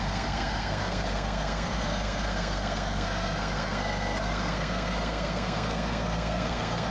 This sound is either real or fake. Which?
fake